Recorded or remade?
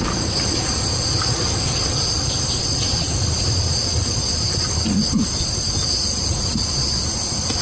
recorded